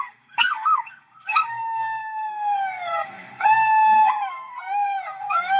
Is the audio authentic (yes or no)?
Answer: no